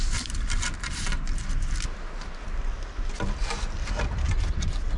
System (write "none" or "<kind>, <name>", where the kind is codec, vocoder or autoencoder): none